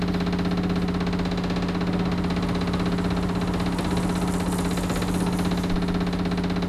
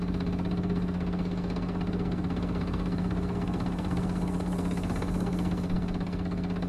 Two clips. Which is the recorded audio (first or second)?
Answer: first